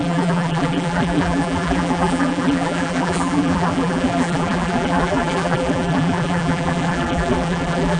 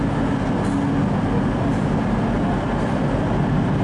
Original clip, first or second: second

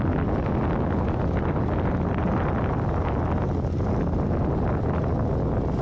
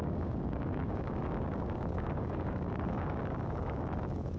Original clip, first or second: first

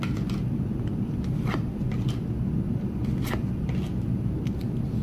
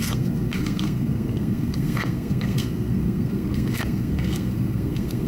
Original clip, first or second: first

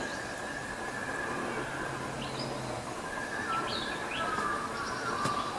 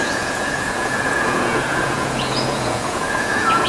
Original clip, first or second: first